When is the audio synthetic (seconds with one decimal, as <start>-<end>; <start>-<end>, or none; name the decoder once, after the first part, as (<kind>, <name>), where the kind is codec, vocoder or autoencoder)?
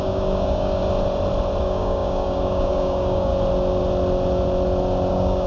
0.0-0.8 (codec, DAC); 1.6-3.3; 5.1-5.5